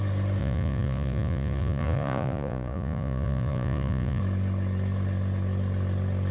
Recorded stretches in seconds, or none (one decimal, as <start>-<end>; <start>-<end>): 0.0-0.4; 4.2-6.3